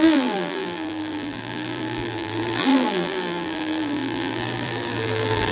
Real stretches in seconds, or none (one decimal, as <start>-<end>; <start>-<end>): none